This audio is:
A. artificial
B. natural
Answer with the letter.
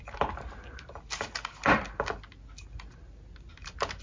B